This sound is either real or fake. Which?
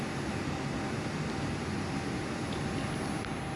real